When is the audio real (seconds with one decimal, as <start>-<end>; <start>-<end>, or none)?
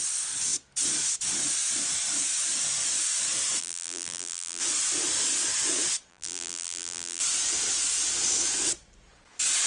0.0-3.6; 4.6-6.1; 7.2-9.7